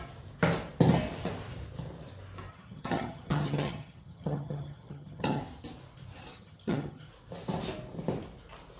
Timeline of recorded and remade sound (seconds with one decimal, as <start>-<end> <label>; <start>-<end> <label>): 0.0-2.5 recorded; 2.5-5.4 remade; 5.4-6.3 recorded; 6.3-7.1 remade; 7.1-8.8 recorded